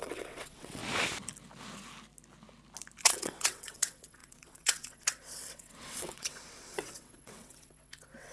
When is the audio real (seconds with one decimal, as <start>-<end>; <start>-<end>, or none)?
0.8-3.0